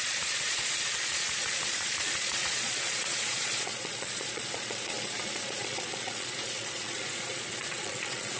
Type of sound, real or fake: fake